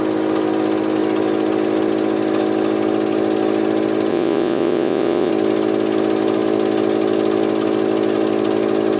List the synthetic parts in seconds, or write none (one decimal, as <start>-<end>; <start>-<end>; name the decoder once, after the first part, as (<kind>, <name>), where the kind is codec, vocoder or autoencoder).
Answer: 4.1-5.3 (vocoder, Vocos)